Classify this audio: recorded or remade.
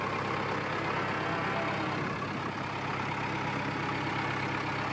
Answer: recorded